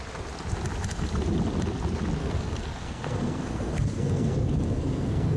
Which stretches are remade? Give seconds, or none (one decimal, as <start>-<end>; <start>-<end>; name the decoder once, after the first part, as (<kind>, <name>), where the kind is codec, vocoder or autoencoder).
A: 2.2-5.4 (codec, SNAC)